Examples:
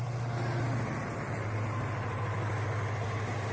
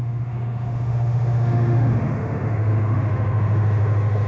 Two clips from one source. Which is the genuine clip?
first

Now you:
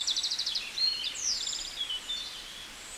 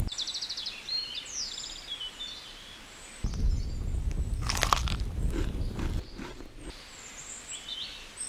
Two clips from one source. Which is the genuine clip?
second